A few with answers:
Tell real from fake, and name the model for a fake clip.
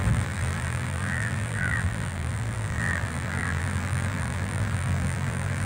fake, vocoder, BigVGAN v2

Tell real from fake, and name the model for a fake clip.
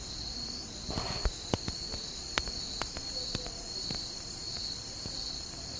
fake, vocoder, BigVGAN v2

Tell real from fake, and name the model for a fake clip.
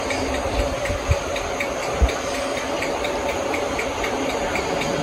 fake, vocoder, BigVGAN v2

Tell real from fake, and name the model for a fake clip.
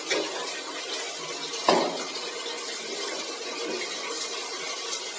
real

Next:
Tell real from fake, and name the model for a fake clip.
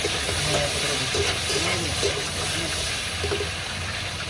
real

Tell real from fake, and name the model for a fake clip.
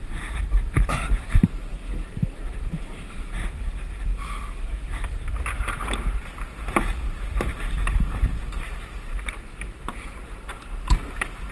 fake, vocoder, BigVGAN v2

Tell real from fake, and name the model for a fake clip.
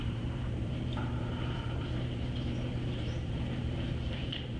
fake, vocoder, BigVGAN v2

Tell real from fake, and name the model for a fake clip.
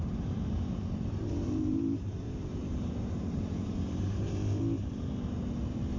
fake, vocoder, BigVGAN v2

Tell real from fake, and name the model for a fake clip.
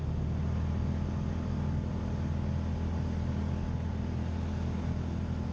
real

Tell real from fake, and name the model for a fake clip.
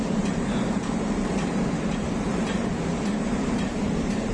fake, vocoder, BigVGAN v2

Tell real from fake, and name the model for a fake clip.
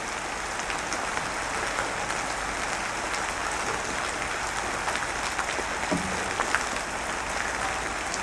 real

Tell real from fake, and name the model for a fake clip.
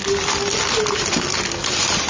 real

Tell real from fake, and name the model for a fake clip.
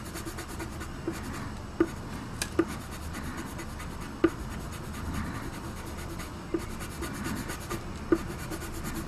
real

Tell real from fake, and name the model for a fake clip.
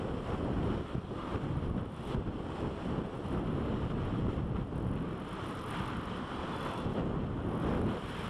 real